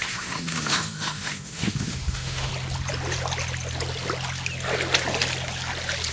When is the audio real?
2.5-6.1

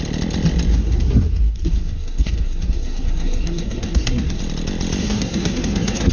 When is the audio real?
0.0-0.7; 4.4-5.0